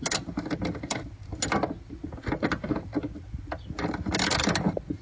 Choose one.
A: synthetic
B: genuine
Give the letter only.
B